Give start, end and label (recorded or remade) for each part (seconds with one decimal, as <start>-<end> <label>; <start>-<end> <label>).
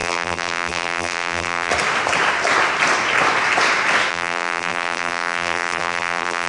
0.0-1.7 remade; 1.7-4.1 recorded; 4.1-6.5 remade